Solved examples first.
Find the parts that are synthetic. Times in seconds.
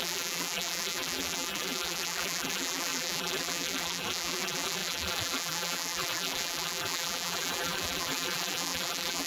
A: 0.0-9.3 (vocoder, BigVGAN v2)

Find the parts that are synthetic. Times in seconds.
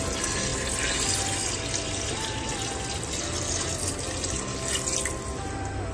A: none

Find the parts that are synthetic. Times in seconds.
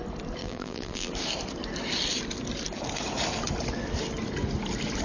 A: 0.4-1.1 (vocoder, BigVGAN v2)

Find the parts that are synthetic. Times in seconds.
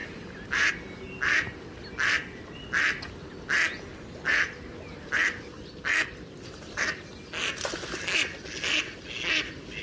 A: 0.0-0.7 (vocoder, BigVGAN v2)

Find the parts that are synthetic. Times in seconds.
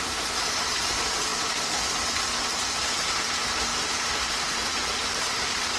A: 0.0-3.7 (vocoder, BigVGAN v2); 4.3-5.8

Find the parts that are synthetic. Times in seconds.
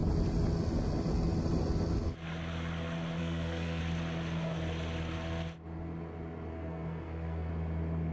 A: 3.2-3.8 (codec, SNAC); 6.5-7.5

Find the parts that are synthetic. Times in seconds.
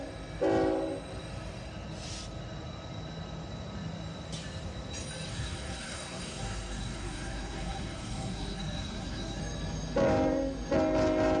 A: 5.3-9.4 (codec, SNAC)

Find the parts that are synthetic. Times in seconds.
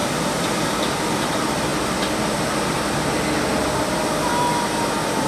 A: 1.1-1.7 (vocoder, BigVGAN v2)